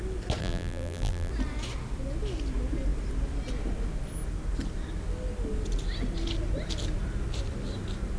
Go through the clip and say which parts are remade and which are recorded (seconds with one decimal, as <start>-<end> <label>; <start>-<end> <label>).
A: 0.0-0.4 recorded; 0.4-1.3 remade; 1.3-8.2 recorded